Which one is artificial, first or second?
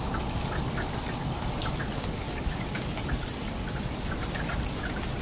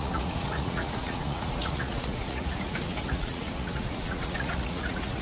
second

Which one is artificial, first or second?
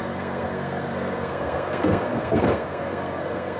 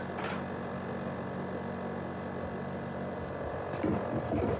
first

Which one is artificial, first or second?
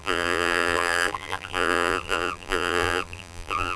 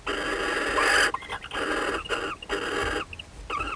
first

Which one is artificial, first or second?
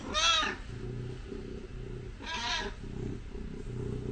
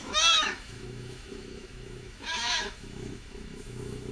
second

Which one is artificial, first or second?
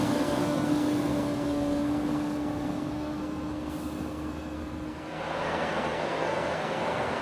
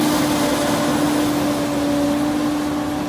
first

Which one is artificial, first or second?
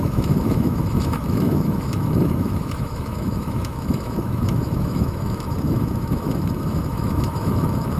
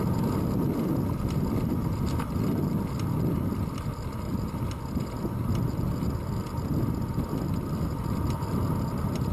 first